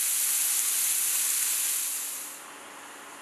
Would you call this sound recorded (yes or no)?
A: yes